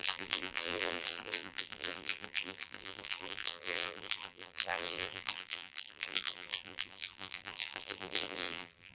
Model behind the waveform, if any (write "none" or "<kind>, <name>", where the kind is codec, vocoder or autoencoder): vocoder, BigVGAN v2